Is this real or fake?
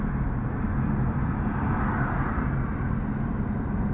real